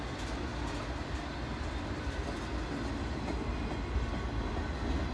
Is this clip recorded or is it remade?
recorded